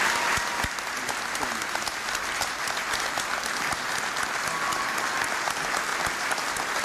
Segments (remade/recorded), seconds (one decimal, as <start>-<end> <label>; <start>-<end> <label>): 0.0-6.8 recorded